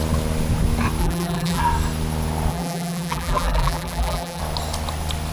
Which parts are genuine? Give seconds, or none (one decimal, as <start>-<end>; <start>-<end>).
0.0-1.0; 1.6-2.5; 4.4-5.3